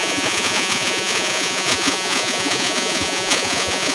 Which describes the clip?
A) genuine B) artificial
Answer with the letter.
B